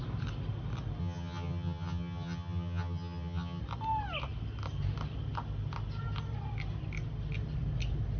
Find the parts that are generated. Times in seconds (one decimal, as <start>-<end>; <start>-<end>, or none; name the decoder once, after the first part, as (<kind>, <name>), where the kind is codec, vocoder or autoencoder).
1.0-3.6 (vocoder, HiFi-GAN)

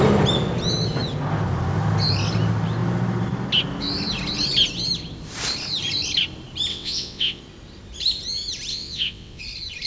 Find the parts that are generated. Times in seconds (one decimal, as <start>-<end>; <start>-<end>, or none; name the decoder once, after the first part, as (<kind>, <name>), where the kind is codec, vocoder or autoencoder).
6.7-7.4 (vocoder, WaveNeXt); 8.7-9.4

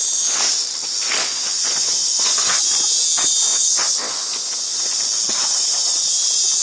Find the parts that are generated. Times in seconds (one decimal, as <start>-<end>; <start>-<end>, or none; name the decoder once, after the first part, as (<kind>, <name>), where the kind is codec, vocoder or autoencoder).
1.2-2.6 (vocoder, Vocos); 3.5-4.9

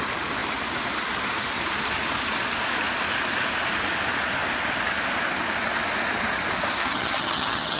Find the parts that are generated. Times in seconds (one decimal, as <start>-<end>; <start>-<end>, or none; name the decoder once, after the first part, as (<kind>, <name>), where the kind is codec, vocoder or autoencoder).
6.8-7.8 (vocoder, HiFi-GAN)

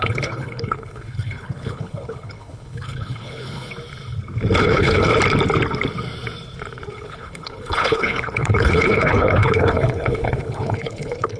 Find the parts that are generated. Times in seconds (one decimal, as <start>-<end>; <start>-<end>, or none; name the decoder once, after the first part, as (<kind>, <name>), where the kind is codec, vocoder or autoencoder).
0.0-3.7 (codec, HILCodec); 4.6-5.1; 6.9-11.4

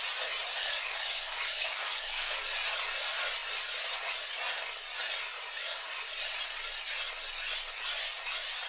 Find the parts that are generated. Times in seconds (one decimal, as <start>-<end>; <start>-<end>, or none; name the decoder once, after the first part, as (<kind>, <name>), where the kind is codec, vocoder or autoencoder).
0.6-2.4 (codec, DAC)

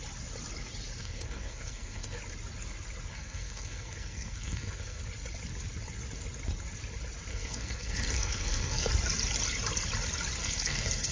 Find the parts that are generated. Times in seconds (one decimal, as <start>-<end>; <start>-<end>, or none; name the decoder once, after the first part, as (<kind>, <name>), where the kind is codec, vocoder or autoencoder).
1.0-2.2 (codec, SNAC); 3.1-5.0; 7.3-8.9; 10.4-11.1

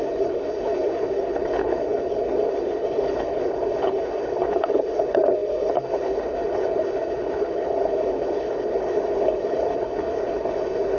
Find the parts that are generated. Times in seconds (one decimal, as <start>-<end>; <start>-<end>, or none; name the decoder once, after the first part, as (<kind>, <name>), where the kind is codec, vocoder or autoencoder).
0.0-11.0 (codec, HILCodec)